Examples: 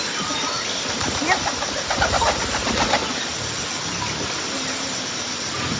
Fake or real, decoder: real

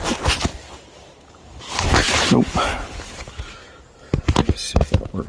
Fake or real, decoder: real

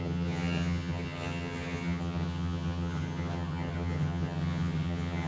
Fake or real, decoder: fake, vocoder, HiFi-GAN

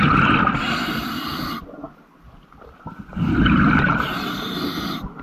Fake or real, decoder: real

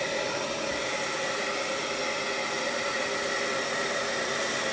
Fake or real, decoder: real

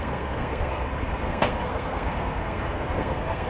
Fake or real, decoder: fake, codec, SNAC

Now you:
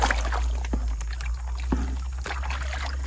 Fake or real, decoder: real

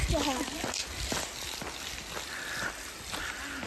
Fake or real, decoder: real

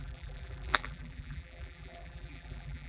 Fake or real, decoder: fake, vocoder, BigVGAN v2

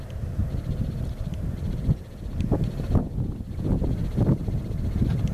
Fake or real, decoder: real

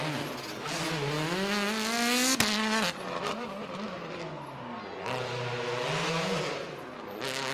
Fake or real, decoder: real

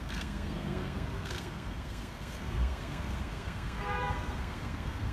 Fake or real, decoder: fake, codec, SNAC